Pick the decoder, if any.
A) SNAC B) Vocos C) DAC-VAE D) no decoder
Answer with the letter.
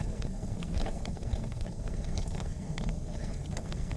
A